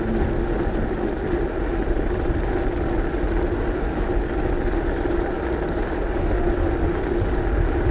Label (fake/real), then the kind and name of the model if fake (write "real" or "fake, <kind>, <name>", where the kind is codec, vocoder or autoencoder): real